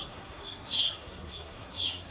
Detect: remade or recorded remade